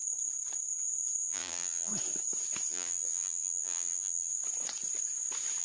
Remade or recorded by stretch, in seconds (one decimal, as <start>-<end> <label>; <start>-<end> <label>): 0.0-1.2 recorded; 1.2-1.9 remade; 1.9-2.7 recorded; 2.7-4.3 remade; 4.3-5.6 recorded